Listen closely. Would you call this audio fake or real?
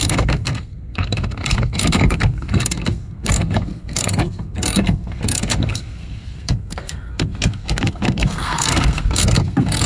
fake